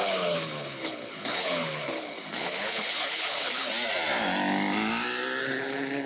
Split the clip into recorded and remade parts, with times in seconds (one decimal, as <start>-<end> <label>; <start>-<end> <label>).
0.0-3.7 remade; 3.7-5.4 recorded; 5.4-6.1 remade